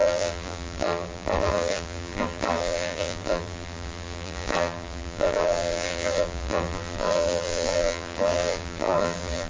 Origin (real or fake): fake